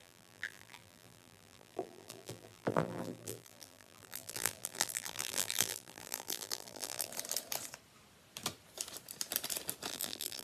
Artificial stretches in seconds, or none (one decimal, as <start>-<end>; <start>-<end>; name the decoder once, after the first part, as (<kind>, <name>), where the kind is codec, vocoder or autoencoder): 0.0-7.1 (vocoder, BigVGAN v2); 9.9-10.4